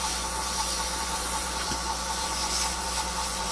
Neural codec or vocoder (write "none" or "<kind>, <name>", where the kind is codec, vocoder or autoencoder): vocoder, Vocos